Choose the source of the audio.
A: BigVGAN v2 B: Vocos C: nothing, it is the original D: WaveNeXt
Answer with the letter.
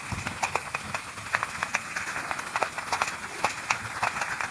C